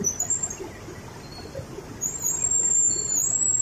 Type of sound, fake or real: real